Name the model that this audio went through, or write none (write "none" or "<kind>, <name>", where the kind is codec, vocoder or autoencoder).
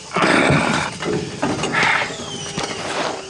none